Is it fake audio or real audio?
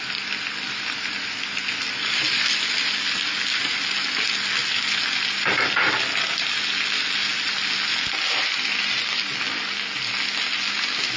real